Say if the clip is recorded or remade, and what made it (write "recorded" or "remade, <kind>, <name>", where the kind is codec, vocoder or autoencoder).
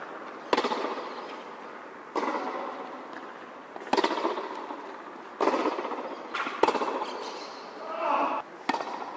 recorded